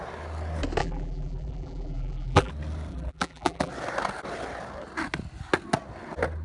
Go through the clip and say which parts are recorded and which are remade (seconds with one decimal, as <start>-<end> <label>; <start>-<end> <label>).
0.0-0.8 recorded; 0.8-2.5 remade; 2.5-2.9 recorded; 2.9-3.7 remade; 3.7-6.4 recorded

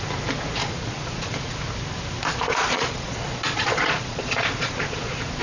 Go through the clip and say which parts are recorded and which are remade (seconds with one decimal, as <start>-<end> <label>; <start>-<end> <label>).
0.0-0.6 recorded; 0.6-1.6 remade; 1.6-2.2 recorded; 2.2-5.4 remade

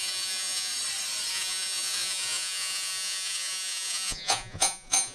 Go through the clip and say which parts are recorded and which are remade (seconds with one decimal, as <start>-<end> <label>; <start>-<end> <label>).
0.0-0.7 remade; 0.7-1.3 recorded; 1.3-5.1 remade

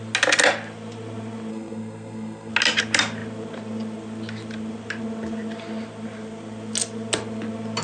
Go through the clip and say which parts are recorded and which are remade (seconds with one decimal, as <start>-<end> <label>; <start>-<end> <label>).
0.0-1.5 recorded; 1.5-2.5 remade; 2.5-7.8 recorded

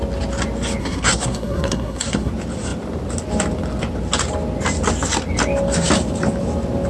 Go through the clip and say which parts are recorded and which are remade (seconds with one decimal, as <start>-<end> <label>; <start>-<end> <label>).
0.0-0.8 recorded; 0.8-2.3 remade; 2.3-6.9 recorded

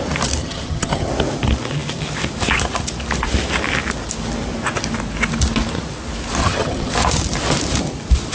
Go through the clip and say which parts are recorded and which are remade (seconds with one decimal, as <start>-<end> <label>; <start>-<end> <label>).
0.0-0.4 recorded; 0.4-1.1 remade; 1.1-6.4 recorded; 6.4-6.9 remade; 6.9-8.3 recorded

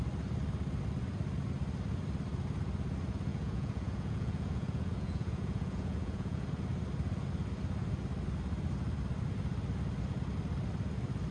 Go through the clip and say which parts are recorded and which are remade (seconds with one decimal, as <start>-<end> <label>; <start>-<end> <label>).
0.0-3.3 recorded; 3.3-6.5 remade; 6.5-11.3 recorded